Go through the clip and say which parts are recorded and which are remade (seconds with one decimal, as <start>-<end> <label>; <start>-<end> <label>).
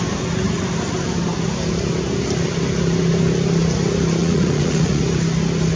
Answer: 0.0-4.2 recorded; 4.2-5.0 remade; 5.0-5.8 recorded